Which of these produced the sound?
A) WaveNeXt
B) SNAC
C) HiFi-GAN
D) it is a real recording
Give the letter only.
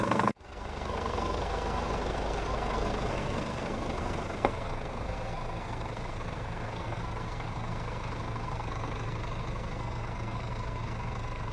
B